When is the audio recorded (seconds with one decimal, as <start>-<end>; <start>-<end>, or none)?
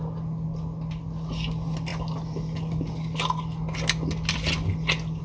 0.0-5.2